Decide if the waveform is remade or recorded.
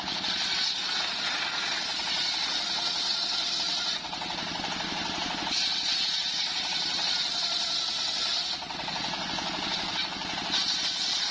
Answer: recorded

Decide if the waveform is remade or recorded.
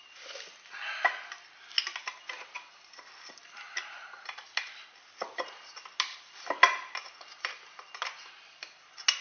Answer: recorded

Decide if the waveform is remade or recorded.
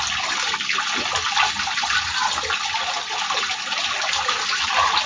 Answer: recorded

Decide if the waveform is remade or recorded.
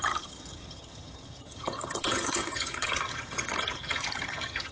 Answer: remade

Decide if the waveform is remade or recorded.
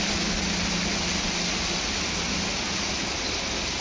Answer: recorded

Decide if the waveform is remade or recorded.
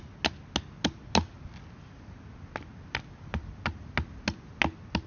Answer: recorded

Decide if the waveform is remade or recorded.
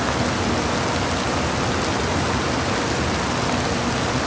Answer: recorded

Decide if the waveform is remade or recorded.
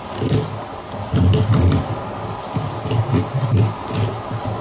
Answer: recorded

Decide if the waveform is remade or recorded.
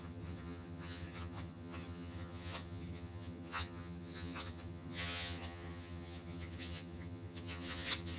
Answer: remade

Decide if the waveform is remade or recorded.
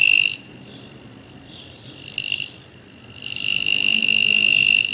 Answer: recorded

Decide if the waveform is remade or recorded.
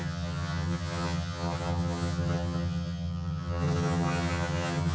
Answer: remade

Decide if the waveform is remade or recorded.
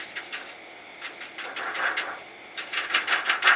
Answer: recorded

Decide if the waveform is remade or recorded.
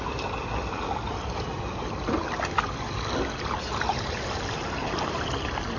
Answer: recorded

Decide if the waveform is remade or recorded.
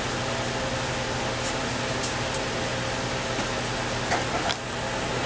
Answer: recorded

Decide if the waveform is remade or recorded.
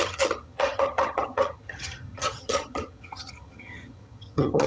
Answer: remade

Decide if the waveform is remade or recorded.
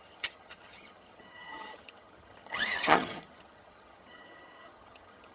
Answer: remade